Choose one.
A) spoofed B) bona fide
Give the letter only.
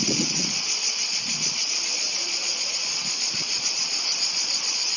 A